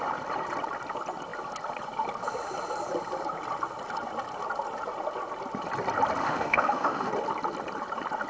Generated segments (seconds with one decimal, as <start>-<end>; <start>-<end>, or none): 6.2-7.1